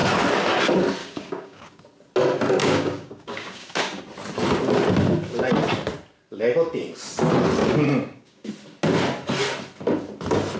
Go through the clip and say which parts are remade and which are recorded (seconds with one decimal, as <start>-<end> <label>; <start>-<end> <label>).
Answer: 0.0-1.0 recorded; 1.0-1.8 remade; 1.8-2.6 recorded; 2.6-4.0 remade; 4.0-7.6 recorded; 7.6-8.5 remade; 8.5-10.6 recorded